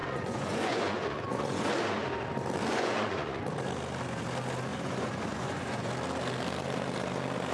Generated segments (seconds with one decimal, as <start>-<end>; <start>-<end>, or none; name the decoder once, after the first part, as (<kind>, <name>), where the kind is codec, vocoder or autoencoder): 0.0-1.7 (vocoder, Vocos); 2.7-3.4; 4.7-5.9